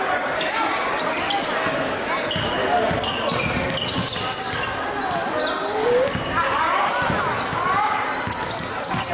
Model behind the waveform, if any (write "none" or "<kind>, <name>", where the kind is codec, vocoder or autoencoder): none